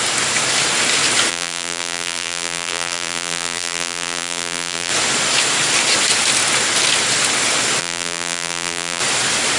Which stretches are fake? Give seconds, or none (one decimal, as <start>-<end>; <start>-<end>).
1.3-4.9; 7.8-9.0